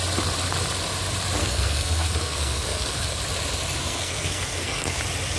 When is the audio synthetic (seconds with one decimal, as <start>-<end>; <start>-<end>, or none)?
1.4-3.2; 3.8-5.0